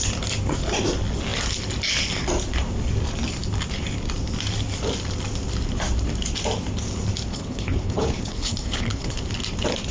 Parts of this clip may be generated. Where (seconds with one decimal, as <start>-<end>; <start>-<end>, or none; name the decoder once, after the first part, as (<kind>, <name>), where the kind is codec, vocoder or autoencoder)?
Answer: 7.3-9.2 (codec, HILCodec)